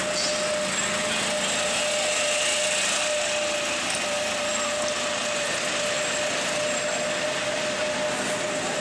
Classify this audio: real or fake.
real